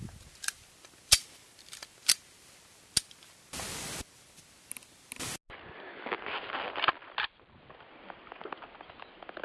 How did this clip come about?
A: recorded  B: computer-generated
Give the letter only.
A